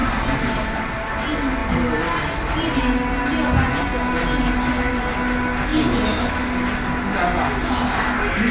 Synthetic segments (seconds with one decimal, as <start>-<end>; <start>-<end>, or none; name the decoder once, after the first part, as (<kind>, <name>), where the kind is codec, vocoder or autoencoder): none